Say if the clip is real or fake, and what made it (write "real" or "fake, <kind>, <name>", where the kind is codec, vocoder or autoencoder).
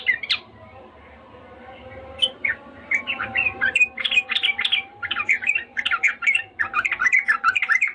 fake, vocoder, BigVGAN v2